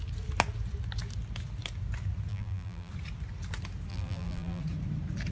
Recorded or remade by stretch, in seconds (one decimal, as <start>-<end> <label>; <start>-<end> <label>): 0.0-2.3 recorded; 2.3-2.9 remade; 2.9-3.9 recorded; 3.9-4.6 remade; 4.6-5.3 recorded